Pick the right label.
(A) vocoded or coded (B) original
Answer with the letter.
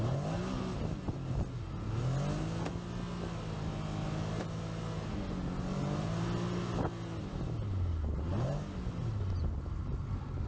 B